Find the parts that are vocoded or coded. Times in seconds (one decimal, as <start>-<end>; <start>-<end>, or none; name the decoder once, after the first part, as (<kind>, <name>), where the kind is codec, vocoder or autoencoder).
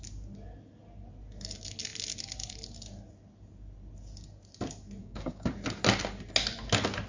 5.0-5.5 (codec, DAC)